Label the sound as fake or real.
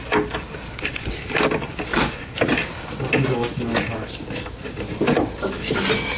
real